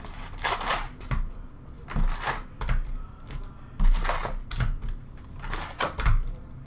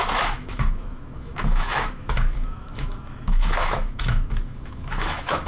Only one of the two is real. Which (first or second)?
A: first